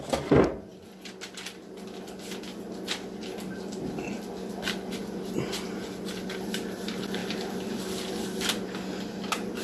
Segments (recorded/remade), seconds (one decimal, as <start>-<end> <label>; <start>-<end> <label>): 0.0-5.0 recorded; 5.0-5.7 remade; 5.7-7.2 recorded; 7.2-8.4 remade; 8.4-9.6 recorded